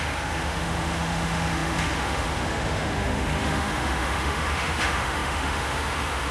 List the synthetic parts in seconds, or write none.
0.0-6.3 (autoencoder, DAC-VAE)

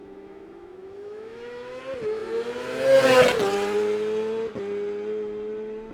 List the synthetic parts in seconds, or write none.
0.0-1.8 (autoencoder, DAC-VAE)